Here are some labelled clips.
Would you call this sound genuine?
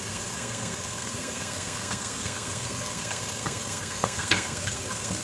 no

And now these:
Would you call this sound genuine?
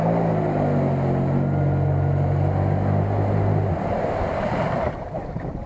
yes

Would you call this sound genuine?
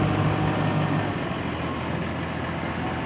yes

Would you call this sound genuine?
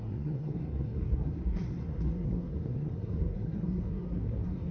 no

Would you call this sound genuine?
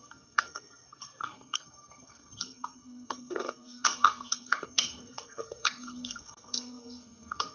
no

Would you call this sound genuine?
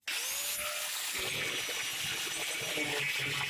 yes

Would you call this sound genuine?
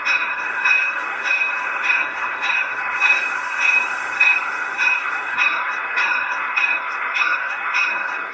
no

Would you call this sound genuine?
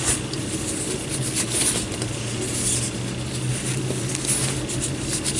yes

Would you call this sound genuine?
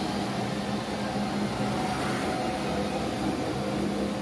yes